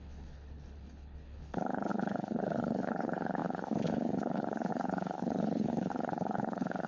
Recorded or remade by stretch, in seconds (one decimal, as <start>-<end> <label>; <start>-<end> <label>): 0.0-6.9 remade